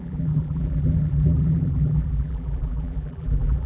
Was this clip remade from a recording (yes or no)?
yes